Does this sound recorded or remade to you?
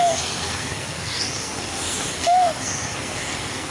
remade